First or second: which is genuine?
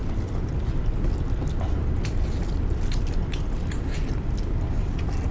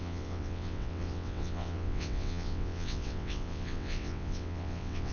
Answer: first